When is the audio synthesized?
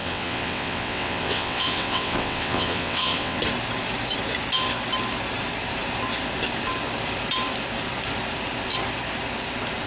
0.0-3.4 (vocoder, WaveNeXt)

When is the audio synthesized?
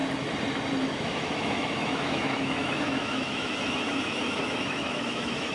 0.8-5.5 (autoencoder, DAC-VAE)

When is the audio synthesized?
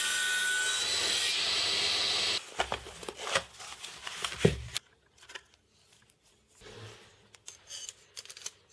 none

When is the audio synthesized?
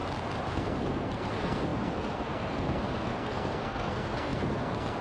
0.5-5.0 (codec, SNAC)